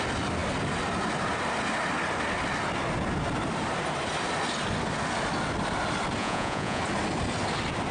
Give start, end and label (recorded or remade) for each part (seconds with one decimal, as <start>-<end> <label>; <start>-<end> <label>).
0.0-6.2 recorded; 6.2-6.8 remade; 6.8-7.9 recorded